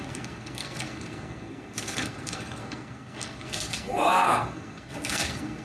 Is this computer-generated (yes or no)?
yes